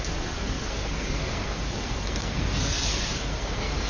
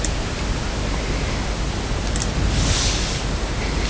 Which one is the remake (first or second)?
first